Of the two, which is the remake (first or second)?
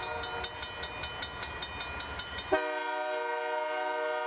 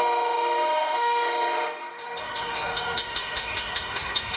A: second